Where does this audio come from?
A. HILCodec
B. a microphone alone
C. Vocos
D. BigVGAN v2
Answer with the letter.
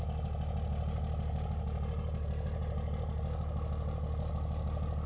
B